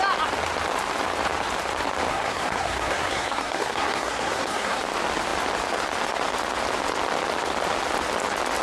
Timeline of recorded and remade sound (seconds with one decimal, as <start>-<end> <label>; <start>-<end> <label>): 0.0-2.1 recorded; 2.1-4.8 remade; 4.8-8.6 recorded